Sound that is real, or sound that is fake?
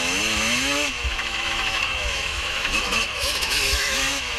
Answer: fake